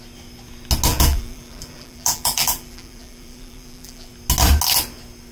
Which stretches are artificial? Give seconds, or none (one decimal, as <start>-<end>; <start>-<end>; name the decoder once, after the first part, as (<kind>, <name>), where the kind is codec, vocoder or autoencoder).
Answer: 0.9-4.1 (vocoder, BigVGAN v2)